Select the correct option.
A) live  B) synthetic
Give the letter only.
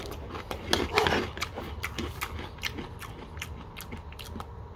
A